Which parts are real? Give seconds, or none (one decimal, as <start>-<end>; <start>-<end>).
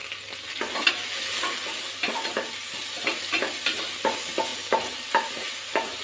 0.0-6.0